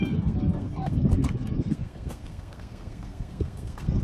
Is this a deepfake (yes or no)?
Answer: yes